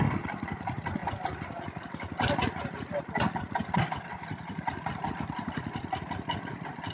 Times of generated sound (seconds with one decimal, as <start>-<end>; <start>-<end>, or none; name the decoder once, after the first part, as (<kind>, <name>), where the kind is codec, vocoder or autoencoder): none